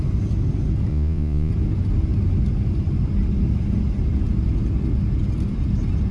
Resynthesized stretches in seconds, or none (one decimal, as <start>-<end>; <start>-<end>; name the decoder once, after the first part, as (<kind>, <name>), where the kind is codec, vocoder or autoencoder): 0.9-1.5 (vocoder, Vocos)